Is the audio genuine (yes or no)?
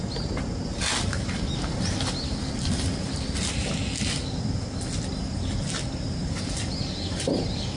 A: yes